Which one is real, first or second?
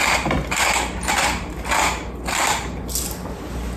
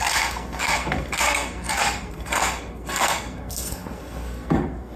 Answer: first